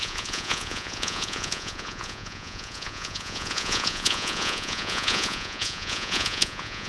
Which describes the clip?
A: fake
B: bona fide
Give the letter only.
A